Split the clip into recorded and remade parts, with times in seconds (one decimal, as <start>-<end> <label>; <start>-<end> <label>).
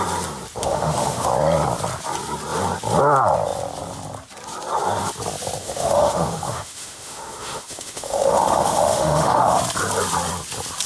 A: 0.0-0.6 recorded; 0.6-1.3 remade; 1.3-5.6 recorded; 5.6-9.6 remade; 9.6-10.9 recorded